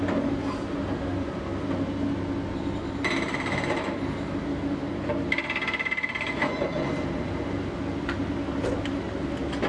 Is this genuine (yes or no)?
yes